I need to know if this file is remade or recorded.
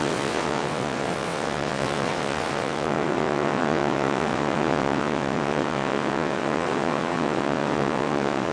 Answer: remade